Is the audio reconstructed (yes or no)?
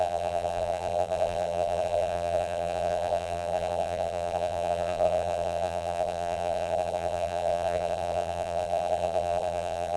yes